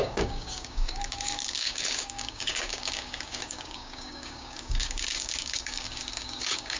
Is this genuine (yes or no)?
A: no